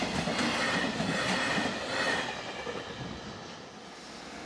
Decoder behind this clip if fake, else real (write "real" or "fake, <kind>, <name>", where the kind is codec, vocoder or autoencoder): real